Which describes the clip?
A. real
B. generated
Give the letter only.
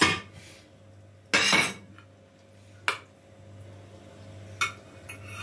A